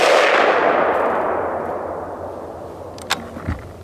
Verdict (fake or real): real